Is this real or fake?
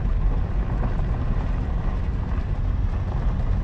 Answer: real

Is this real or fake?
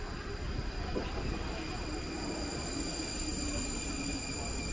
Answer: real